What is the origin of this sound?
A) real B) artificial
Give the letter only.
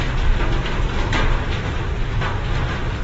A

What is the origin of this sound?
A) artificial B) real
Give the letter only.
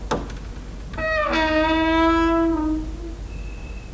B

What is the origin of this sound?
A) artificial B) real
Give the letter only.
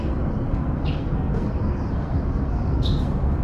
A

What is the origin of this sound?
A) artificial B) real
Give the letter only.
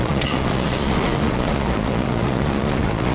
A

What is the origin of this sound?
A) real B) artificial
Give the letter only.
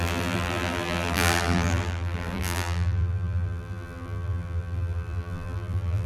B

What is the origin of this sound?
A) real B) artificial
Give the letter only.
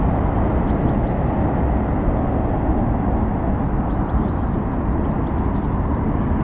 A